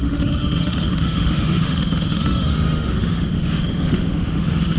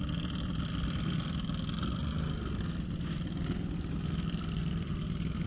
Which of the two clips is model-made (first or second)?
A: first